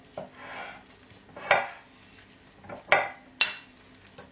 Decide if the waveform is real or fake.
real